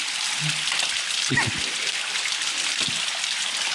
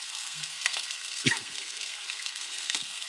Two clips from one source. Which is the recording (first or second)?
first